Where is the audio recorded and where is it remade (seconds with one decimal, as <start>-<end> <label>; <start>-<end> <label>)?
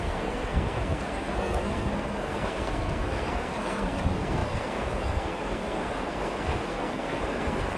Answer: 0.0-7.8 remade